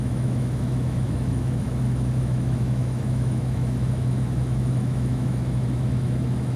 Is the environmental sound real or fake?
fake